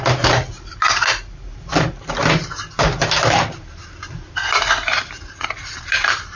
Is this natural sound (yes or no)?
yes